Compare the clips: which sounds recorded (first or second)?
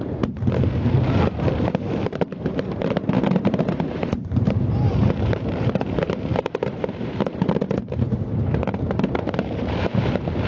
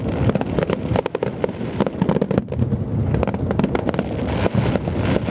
second